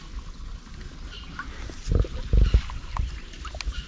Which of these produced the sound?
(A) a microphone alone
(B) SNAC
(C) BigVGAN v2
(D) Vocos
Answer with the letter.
A